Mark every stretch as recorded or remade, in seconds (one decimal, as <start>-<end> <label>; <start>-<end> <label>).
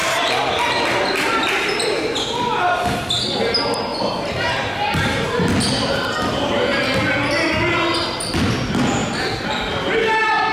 0.0-0.8 remade; 0.8-10.5 recorded